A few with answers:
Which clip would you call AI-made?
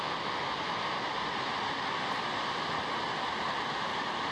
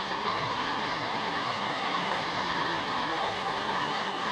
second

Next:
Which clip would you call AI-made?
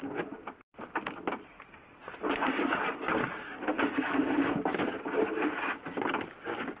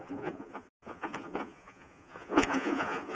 second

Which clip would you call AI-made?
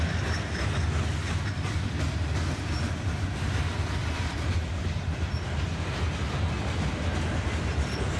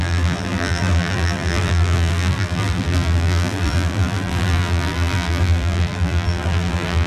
second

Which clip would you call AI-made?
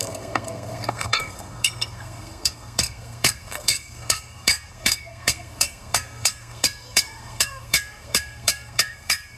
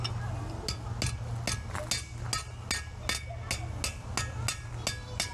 first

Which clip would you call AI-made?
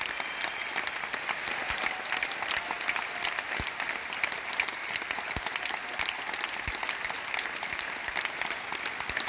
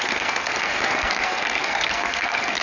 second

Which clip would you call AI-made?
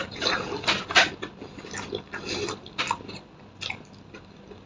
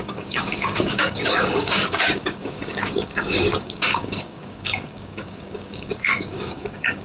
second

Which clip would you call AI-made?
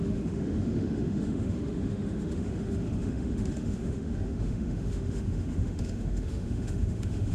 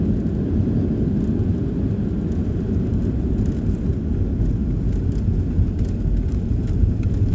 first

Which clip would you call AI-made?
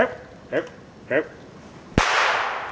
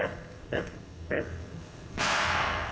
second